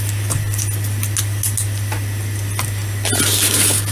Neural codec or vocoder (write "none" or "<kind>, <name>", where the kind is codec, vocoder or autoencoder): none